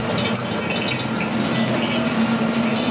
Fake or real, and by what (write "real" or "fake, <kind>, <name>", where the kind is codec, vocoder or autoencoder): real